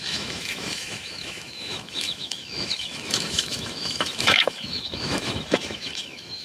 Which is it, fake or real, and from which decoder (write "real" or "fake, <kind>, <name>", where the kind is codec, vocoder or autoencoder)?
fake, autoencoder, DAC-VAE